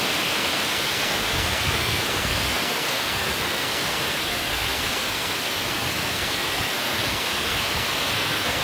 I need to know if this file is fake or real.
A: fake